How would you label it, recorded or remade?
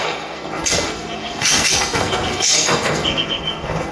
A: remade